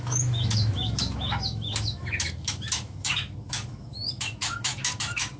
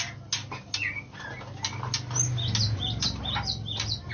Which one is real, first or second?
second